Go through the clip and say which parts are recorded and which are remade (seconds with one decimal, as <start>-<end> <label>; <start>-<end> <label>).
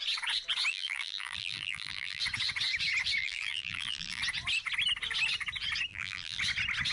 0.0-0.7 recorded; 0.7-2.2 remade; 2.2-3.2 recorded; 3.2-4.2 remade; 4.2-5.9 recorded; 5.9-6.4 remade; 6.4-6.9 recorded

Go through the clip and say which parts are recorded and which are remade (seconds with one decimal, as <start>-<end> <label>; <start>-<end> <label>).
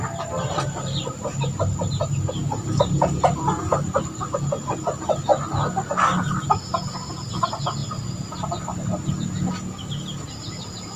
0.0-2.4 recorded; 2.4-3.3 remade; 3.3-11.0 recorded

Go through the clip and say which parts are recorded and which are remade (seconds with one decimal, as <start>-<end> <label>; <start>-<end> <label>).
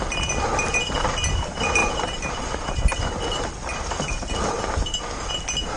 0.0-1.8 recorded; 1.8-5.3 remade; 5.3-5.8 recorded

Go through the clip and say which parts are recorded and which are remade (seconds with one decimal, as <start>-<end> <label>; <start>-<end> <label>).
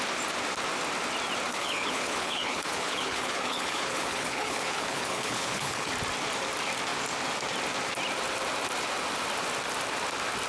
0.0-1.5 recorded; 1.5-5.9 remade; 5.9-10.5 recorded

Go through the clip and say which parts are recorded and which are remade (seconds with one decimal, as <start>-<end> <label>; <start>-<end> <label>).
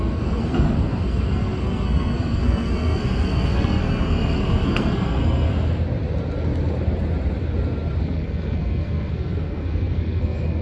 0.0-5.5 remade; 5.5-8.0 recorded; 8.0-10.6 remade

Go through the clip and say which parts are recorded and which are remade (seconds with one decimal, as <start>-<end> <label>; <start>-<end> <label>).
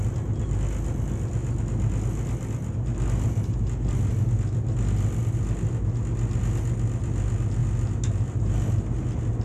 0.0-9.4 recorded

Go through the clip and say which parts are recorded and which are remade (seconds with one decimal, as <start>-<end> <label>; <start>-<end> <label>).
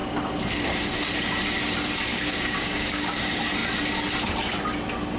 0.0-2.1 recorded; 2.1-3.2 remade; 3.2-5.2 recorded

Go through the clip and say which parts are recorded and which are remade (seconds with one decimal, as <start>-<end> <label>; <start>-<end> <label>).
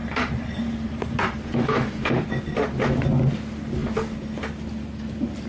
0.0-2.4 remade; 2.4-5.5 recorded